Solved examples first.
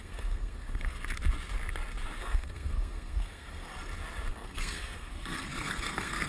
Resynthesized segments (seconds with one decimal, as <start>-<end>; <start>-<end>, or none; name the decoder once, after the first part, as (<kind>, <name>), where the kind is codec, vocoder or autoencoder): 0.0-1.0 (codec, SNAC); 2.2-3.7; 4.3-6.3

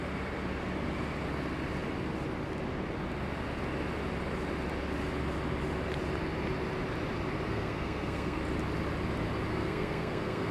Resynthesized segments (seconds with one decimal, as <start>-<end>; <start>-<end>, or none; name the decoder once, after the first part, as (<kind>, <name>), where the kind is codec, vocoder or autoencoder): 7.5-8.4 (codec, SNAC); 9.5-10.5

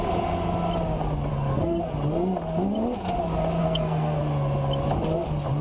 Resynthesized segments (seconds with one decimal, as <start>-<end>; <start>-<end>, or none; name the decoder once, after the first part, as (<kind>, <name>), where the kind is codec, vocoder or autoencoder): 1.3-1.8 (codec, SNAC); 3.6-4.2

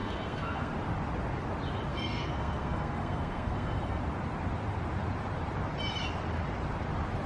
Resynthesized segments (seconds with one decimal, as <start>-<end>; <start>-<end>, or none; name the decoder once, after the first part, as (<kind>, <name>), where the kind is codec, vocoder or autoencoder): 0.0-0.7 (codec, SNAC); 1.9-4.0

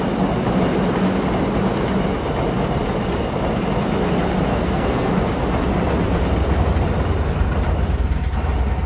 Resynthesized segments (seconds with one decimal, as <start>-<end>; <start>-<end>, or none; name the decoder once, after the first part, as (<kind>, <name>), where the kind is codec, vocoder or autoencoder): 4.5-5.1 (codec, SNAC)

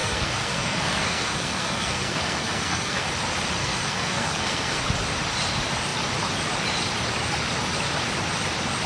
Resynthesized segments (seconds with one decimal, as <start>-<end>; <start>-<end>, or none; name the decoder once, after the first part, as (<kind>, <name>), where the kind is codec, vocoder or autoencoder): 0.0-3.1 (codec, SNAC); 3.6-4.8

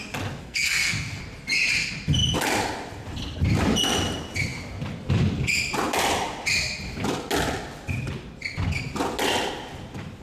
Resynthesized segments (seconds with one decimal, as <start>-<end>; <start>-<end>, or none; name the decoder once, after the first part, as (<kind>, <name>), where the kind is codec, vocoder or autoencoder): 0.4-1.2 (codec, SNAC)

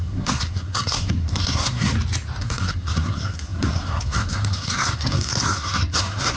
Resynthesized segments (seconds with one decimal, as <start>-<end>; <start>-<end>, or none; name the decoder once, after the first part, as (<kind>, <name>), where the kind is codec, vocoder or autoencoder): 0.0-1.9 (codec, SNAC); 2.4-6.4